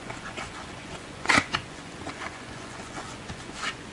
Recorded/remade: remade